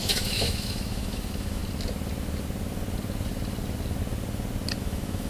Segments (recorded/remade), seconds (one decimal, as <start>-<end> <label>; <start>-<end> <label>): 0.0-1.6 remade; 1.6-4.8 recorded; 4.8-5.3 remade